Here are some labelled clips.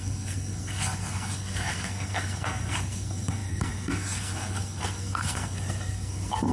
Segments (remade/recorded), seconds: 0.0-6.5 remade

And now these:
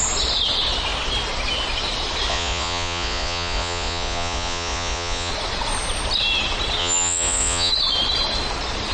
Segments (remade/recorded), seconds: 0.0-2.3 recorded; 2.3-5.3 remade; 5.3-6.8 recorded; 6.8-7.7 remade; 7.7-8.9 recorded

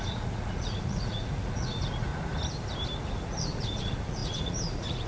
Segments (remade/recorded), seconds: 0.0-2.1 remade; 2.1-3.1 recorded; 3.1-5.1 remade

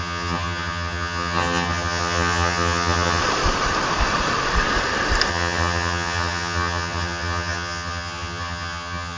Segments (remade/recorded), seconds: 0.0-3.2 remade; 3.2-5.3 recorded; 5.3-9.2 remade

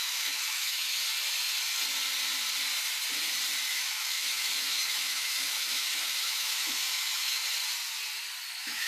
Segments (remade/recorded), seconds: 0.0-1.0 remade; 1.0-3.7 recorded; 3.7-7.4 remade; 7.4-8.5 recorded; 8.5-8.9 remade